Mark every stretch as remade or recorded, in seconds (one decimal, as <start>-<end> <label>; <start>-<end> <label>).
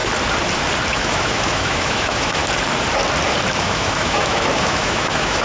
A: 0.0-0.9 recorded; 0.9-2.4 remade; 2.4-3.6 recorded; 3.6-5.4 remade